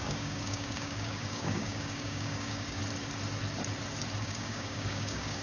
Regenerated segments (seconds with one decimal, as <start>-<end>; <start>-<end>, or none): 0.0-2.8; 4.2-5.4